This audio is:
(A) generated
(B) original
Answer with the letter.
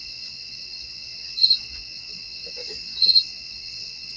A